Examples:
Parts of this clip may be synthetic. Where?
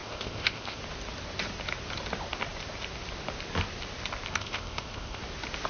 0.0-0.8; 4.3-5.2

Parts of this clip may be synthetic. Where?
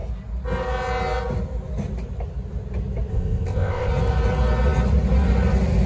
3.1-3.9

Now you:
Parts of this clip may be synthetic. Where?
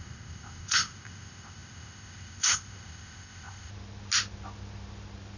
0.0-3.7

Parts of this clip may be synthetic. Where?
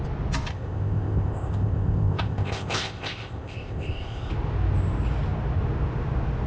0.5-4.3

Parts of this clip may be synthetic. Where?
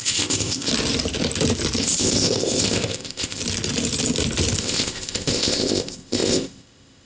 0.0-0.7; 1.8-3.4; 4.6-7.1